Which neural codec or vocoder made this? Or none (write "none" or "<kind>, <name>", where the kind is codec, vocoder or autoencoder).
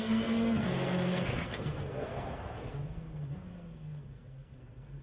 codec, SNAC